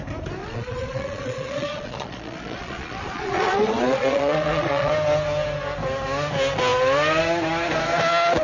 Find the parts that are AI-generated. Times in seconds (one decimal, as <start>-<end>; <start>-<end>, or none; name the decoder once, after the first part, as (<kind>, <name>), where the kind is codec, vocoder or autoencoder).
0.4-4.9 (vocoder, Vocos)